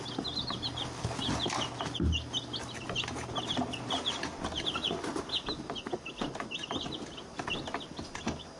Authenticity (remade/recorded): recorded